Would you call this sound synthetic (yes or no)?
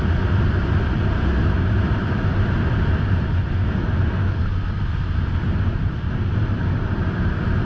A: no